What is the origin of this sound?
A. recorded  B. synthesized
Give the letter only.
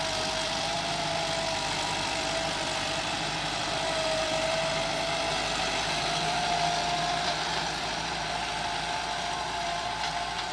B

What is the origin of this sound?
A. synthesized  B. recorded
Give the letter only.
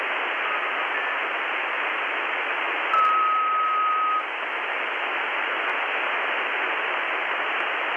B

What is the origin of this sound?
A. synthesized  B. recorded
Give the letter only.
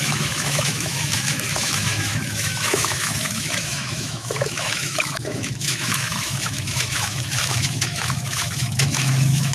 A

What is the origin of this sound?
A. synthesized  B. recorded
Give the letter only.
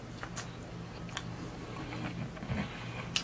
B